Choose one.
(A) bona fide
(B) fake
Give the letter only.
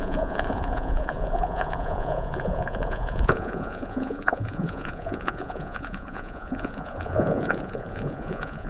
B